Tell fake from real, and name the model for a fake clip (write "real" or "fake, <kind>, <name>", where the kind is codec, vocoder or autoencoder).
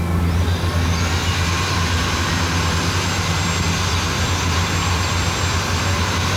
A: real